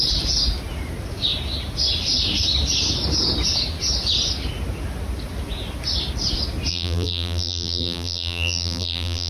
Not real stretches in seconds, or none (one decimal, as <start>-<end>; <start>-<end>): 6.7-9.3